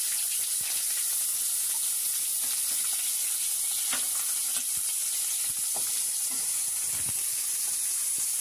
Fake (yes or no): no